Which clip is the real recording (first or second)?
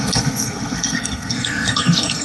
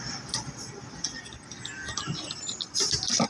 second